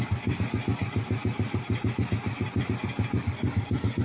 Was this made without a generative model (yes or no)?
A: yes